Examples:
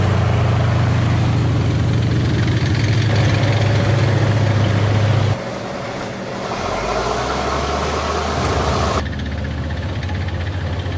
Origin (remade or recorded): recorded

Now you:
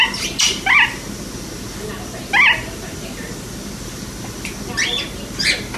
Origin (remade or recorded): recorded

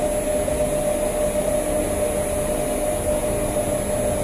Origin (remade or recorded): recorded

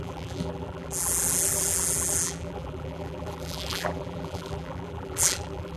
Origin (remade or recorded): remade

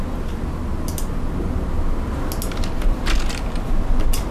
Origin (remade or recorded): recorded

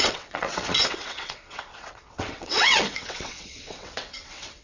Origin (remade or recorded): remade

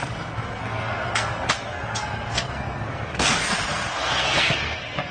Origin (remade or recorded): remade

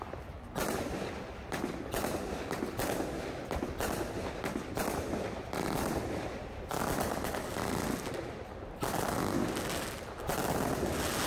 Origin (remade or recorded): recorded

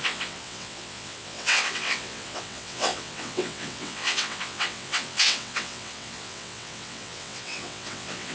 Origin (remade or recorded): remade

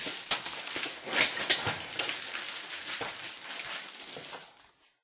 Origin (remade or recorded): recorded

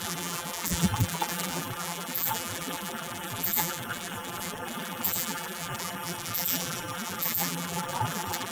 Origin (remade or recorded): remade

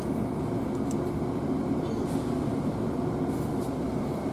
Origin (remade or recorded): recorded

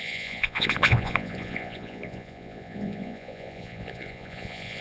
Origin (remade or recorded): remade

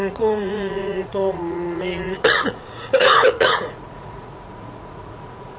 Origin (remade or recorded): remade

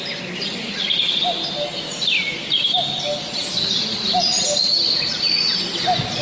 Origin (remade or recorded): recorded